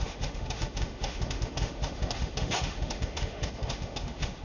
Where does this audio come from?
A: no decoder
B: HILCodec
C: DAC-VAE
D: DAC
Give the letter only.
C